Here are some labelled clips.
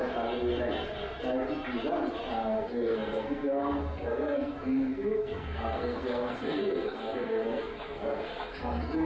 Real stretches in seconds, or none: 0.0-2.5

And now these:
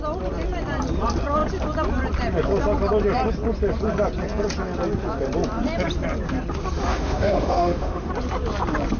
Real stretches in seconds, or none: 0.0-6.9; 8.1-9.0